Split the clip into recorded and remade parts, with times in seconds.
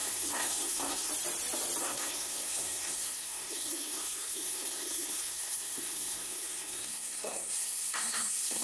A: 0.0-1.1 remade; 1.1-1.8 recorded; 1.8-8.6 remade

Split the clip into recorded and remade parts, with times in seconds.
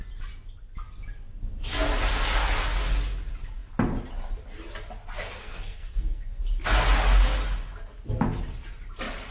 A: 0.0-5.4 recorded; 5.4-6.4 remade; 6.4-9.3 recorded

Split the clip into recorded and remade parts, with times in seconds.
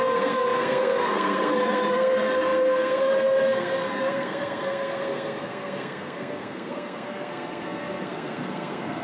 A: 0.0-9.0 remade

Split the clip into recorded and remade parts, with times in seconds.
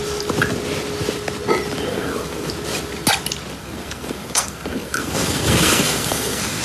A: 0.0-1.9 recorded; 1.9-2.5 remade; 2.5-3.6 recorded; 3.6-6.6 remade